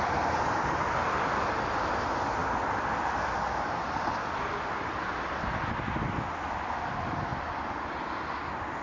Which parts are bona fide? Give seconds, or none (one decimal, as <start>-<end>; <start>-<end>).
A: 0.0-8.8